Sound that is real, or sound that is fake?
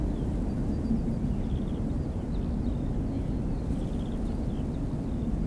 real